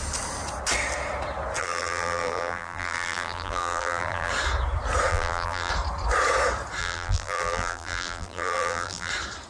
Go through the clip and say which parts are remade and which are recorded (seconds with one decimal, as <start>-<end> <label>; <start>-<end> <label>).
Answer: 0.0-1.6 recorded; 1.6-4.3 remade; 4.3-5.1 recorded; 5.1-5.7 remade; 5.7-6.8 recorded; 6.8-9.1 remade; 9.1-9.5 recorded